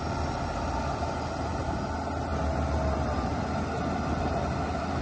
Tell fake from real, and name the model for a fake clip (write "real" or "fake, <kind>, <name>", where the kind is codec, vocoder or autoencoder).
real